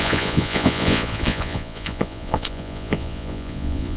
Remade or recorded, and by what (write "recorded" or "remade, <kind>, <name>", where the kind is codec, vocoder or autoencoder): remade, vocoder, Vocos